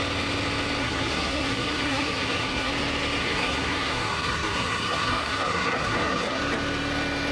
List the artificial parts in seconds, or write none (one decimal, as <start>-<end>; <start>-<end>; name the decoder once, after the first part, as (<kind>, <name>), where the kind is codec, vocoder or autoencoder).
0.8-2.7 (codec, SNAC); 3.2-6.4